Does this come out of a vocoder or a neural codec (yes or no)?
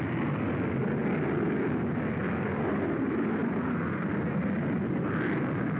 no